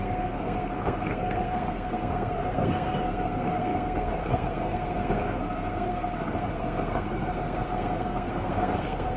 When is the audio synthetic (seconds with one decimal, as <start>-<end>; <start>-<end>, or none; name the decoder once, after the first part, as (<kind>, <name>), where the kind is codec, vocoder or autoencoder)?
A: 0.0-9.2 (codec, SNAC)